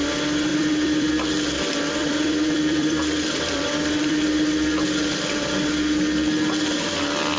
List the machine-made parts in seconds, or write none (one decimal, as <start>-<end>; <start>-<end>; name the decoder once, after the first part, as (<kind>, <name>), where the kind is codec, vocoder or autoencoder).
0.5-1.1 (vocoder, BigVGAN v2); 2.0-5.5